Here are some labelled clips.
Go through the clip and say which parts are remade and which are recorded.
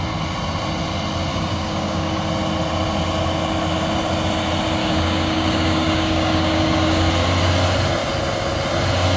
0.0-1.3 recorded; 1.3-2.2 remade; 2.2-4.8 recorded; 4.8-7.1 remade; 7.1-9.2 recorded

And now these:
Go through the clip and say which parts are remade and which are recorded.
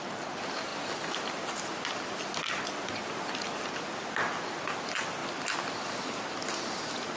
0.0-7.2 recorded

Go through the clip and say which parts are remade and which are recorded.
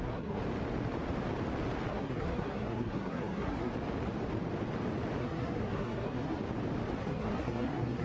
0.0-0.4 remade; 0.4-1.9 recorded; 1.9-3.7 remade; 3.7-5.2 recorded; 5.2-6.4 remade; 6.4-7.0 recorded; 7.0-8.0 remade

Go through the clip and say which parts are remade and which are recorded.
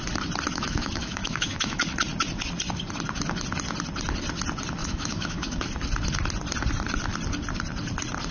0.0-0.5 recorded; 0.5-1.8 remade; 1.8-4.8 recorded; 4.8-5.6 remade; 5.6-8.3 recorded